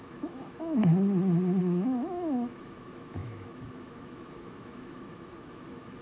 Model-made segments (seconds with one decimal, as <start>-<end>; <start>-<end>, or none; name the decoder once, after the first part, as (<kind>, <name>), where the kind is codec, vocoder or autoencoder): 0.0-0.8 (autoencoder, DAC-VAE); 1.6-6.0